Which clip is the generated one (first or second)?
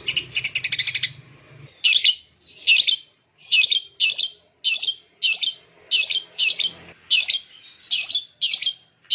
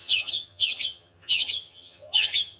second